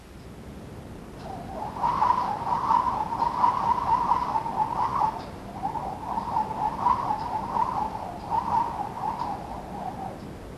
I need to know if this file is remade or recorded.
recorded